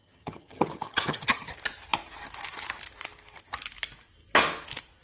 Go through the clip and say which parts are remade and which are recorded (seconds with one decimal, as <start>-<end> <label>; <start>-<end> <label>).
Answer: 0.0-1.5 remade; 1.5-5.0 recorded